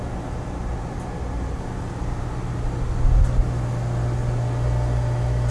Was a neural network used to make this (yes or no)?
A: no